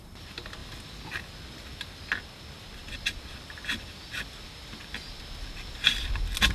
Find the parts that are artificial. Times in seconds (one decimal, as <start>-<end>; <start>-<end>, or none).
none

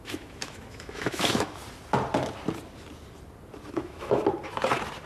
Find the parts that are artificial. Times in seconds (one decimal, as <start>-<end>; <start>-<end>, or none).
0.0-1.6; 3.7-4.2